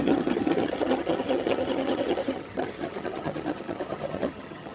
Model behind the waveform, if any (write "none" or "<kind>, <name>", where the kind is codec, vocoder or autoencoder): vocoder, HiFi-GAN